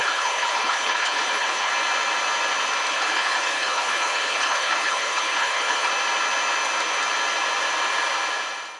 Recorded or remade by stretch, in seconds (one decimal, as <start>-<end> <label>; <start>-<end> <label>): 0.0-1.7 remade; 1.7-2.9 recorded; 2.9-5.9 remade; 5.9-8.8 recorded